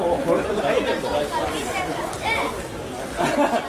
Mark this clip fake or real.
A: real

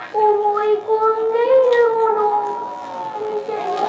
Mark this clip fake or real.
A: fake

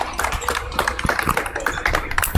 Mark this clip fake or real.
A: fake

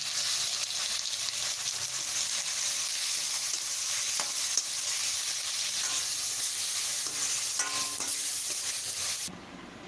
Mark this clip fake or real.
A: real